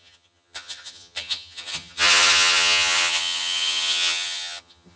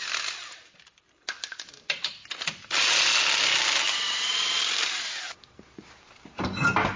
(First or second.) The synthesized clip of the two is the first